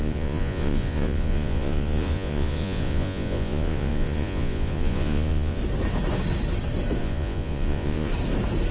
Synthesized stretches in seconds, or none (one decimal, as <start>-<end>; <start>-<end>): 0.0-5.6; 7.0-8.1